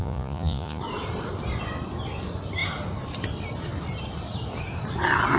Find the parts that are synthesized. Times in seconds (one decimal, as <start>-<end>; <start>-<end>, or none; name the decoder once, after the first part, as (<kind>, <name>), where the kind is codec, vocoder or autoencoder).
0.0-0.8 (vocoder, Vocos)